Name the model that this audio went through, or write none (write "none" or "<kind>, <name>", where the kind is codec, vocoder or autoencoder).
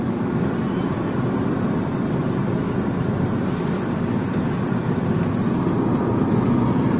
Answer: none